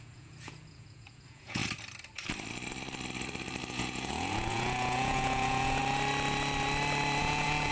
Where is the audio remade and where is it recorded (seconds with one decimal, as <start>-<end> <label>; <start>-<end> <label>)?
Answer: 0.0-1.6 remade; 1.6-3.7 recorded; 3.7-5.8 remade; 5.8-7.2 recorded; 7.2-7.7 remade